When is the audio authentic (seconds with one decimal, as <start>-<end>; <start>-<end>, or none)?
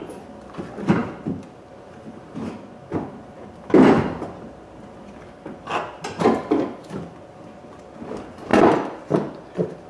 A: 0.0-9.9